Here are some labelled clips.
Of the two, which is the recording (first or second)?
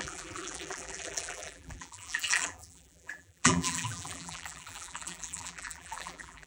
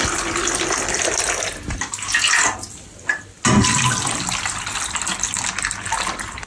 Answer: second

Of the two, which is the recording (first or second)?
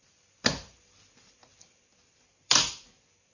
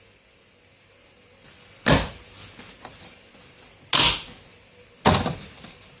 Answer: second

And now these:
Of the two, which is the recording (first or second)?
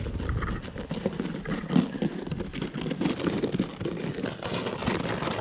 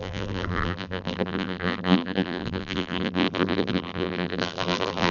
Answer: first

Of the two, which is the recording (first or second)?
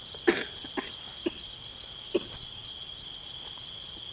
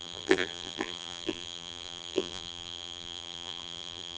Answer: first